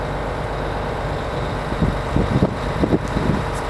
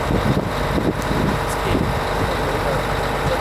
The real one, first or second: second